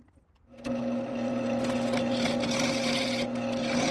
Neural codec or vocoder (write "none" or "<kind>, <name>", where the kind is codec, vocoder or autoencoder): none